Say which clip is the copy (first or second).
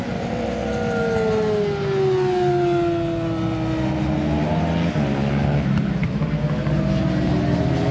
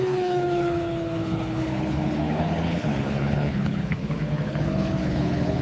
second